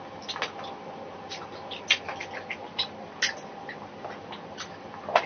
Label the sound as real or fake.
real